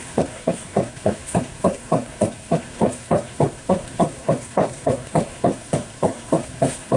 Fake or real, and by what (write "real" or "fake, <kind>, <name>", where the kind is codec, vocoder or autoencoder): fake, codec, SNAC